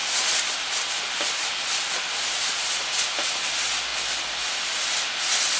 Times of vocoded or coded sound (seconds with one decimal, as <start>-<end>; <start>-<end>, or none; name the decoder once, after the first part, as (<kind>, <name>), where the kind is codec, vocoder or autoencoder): none